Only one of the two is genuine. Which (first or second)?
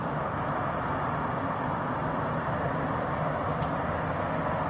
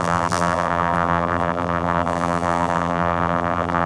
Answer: first